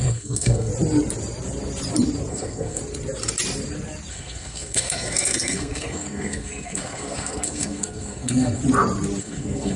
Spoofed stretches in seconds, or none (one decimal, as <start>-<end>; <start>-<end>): 0.0-0.7; 2.3-2.8; 4.1-8.6; 9.2-9.8

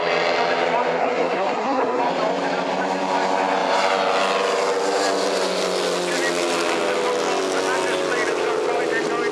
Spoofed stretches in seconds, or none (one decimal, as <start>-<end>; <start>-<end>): 1.0-2.0

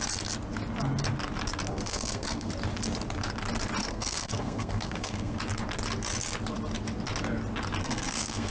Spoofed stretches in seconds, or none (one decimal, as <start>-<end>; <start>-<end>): 1.7-2.5; 3.8-5.4; 7.8-8.5

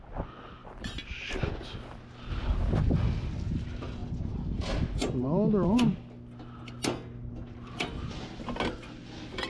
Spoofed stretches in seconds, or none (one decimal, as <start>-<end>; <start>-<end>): none

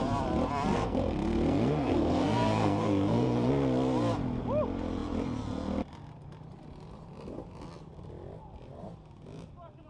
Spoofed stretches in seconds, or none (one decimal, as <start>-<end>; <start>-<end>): 0.7-3.5